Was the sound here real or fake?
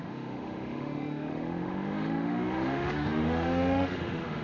fake